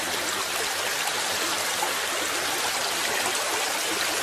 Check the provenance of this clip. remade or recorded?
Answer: recorded